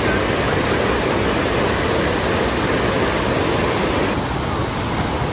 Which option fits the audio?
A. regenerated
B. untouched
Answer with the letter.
B